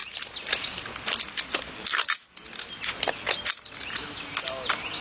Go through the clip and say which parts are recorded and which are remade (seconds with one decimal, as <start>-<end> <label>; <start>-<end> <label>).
0.0-5.0 recorded

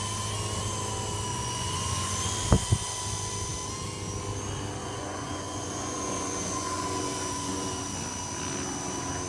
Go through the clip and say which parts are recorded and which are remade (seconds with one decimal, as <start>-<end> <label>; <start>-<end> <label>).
0.0-1.3 recorded; 1.3-2.1 remade; 2.1-4.8 recorded; 4.8-7.8 remade; 7.8-9.3 recorded